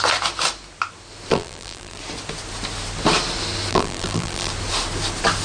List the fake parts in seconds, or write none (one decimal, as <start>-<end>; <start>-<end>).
1.3-2.0; 3.7-4.5